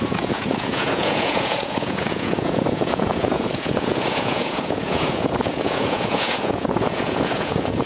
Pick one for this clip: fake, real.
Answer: fake